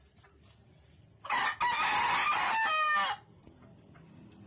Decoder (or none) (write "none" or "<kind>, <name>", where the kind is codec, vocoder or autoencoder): none